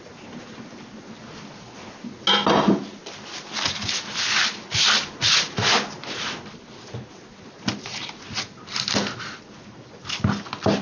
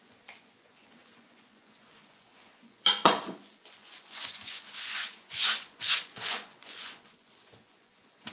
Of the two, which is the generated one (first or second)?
second